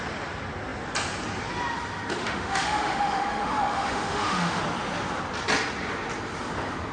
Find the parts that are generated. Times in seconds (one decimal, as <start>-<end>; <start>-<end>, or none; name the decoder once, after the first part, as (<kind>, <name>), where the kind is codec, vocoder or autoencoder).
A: 2.2-4.6 (autoencoder, DAC-VAE)